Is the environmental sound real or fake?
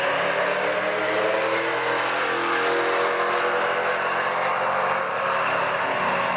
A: real